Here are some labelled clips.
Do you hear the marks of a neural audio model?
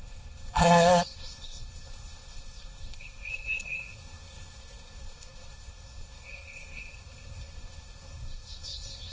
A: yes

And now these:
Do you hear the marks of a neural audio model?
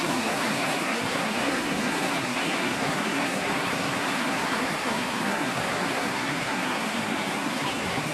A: yes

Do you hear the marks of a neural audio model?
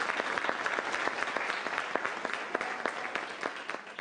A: no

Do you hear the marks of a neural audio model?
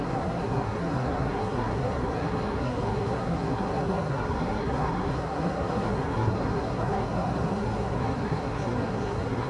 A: yes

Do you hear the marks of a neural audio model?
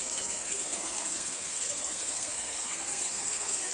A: yes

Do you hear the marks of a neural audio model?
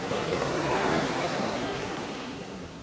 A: yes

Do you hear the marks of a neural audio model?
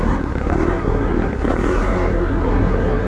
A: yes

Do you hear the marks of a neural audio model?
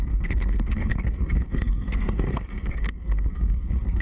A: yes